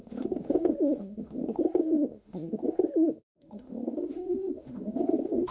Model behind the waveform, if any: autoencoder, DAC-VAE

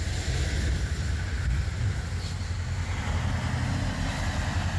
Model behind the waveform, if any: none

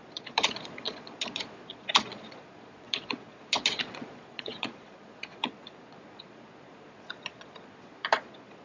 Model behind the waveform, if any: vocoder, Vocos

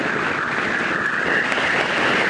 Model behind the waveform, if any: none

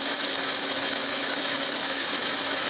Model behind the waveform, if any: autoencoder, DAC-VAE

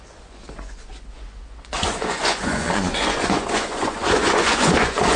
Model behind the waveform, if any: vocoder, Vocos